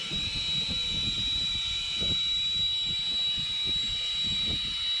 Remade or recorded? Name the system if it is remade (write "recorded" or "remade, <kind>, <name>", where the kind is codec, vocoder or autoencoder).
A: recorded